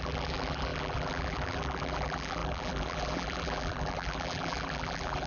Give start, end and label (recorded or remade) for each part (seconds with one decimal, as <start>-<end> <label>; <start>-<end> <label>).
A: 0.0-5.3 remade